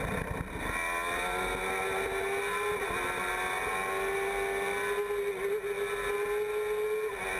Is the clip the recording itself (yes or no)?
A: yes